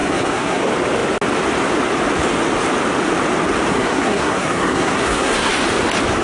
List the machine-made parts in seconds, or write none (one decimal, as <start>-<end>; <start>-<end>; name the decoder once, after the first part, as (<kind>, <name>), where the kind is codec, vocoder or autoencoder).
0.0-0.6 (codec, SNAC); 3.7-5.5